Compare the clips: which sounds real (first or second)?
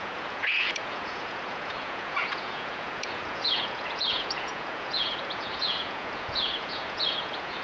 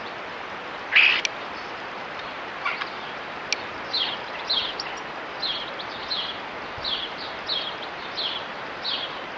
second